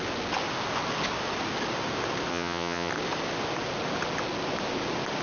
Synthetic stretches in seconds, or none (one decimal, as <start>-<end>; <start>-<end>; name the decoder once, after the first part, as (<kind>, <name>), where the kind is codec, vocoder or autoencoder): 2.3-2.9 (vocoder, HiFi-GAN)